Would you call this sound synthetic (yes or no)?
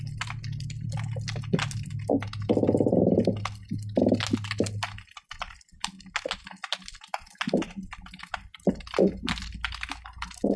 no